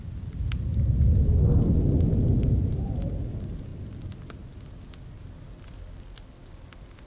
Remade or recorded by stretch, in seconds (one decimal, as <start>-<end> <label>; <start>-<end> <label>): 0.0-7.1 recorded